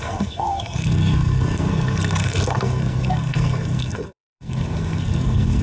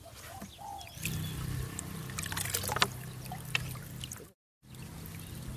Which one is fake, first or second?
first